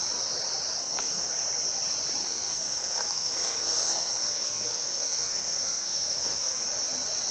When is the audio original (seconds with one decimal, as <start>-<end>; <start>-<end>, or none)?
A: 0.0-0.8; 1.3-2.2; 6.6-7.3